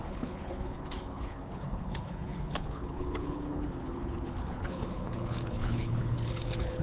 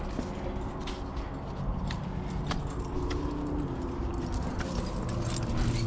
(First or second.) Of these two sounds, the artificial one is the first